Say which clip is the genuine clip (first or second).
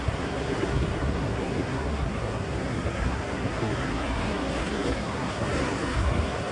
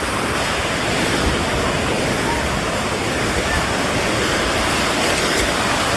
second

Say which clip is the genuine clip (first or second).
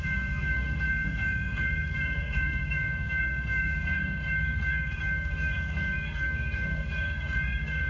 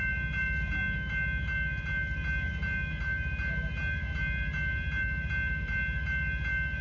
second